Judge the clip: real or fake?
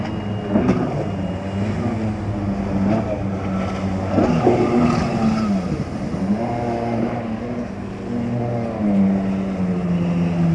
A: real